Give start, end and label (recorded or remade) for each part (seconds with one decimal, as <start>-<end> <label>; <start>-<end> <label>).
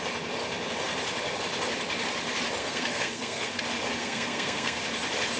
0.0-2.6 recorded; 2.6-3.6 remade; 3.6-4.0 recorded; 4.0-4.8 remade; 4.8-5.4 recorded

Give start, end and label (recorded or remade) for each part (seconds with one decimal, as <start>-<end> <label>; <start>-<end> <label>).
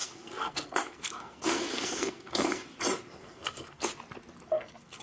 0.0-2.6 remade; 2.6-3.1 recorded; 3.1-3.9 remade; 3.9-4.5 recorded; 4.5-5.0 remade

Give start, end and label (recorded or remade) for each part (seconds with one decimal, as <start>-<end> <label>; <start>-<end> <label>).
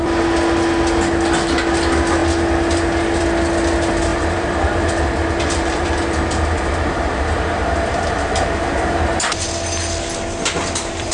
0.0-4.1 recorded; 4.1-9.4 remade; 9.4-11.1 recorded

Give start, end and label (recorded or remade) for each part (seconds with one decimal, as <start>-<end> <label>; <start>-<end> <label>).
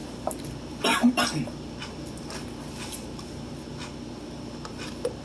0.0-5.2 recorded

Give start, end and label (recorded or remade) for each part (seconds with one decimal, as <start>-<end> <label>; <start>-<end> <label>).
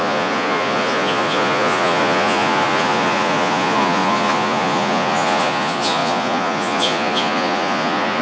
0.0-8.2 remade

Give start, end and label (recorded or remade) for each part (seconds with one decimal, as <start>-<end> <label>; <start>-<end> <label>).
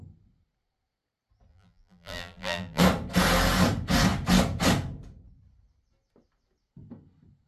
0.0-1.5 recorded; 1.5-2.8 remade; 2.8-7.5 recorded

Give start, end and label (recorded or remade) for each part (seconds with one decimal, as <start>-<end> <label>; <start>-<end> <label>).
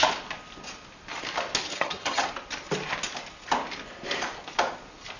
0.0-1.7 recorded; 1.7-2.3 remade; 2.3-5.2 recorded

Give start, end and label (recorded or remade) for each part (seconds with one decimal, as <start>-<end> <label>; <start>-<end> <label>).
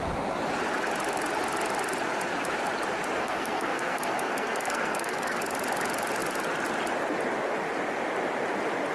0.0-3.2 recorded; 3.2-5.4 remade; 5.4-8.9 recorded